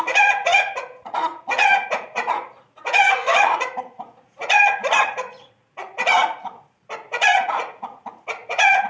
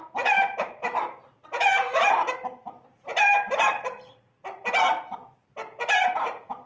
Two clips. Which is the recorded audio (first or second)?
second